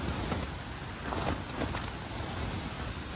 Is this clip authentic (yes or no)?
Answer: yes